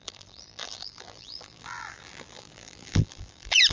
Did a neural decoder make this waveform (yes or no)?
yes